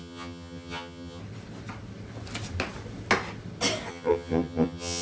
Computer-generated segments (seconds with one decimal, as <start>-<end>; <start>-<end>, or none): 0.0-1.2; 3.9-5.0